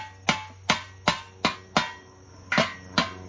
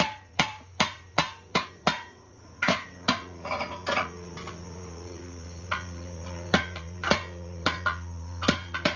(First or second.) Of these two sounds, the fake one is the second